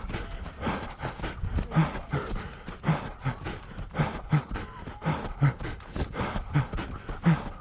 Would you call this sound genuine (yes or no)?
yes